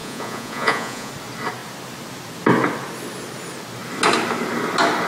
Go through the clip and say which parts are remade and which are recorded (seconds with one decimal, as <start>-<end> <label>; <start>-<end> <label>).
0.0-1.1 remade; 1.1-5.1 recorded